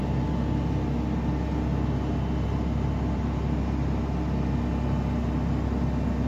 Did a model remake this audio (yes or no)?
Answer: no